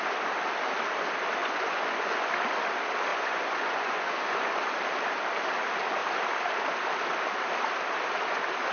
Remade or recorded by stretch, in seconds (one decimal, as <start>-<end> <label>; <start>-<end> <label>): 0.0-1.4 recorded; 1.4-2.3 remade; 2.3-3.1 recorded; 3.1-4.7 remade; 4.7-8.7 recorded